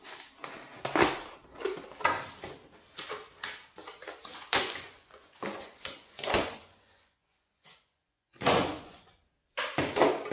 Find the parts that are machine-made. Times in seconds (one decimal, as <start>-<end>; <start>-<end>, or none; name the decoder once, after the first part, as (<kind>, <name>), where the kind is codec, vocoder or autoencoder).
4.3-9.2 (vocoder, Vocos)